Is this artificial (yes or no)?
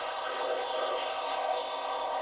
yes